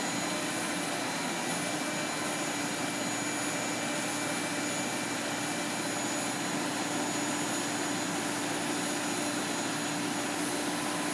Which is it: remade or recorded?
recorded